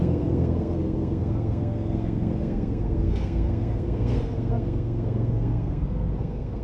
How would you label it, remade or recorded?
remade